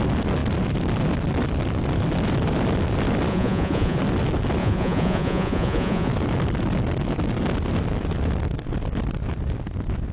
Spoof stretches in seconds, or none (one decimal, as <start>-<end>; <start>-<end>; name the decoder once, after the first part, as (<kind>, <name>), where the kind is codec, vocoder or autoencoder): 3.3-4.0 (vocoder, Vocos); 4.6-6.1